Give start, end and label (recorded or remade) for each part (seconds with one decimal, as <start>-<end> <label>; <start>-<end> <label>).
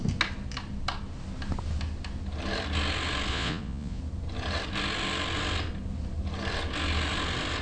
0.0-3.3 recorded; 3.3-4.0 remade; 4.0-7.6 recorded